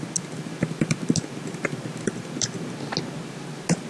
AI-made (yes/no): no